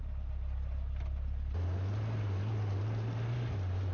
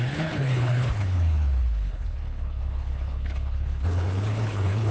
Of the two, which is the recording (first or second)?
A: first